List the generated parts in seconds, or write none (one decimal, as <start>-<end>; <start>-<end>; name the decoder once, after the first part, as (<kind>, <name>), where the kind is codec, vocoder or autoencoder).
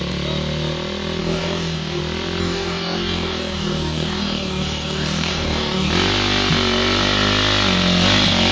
1.2-2.0 (codec, DAC); 2.4-5.9